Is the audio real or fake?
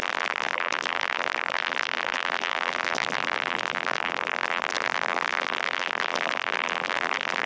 fake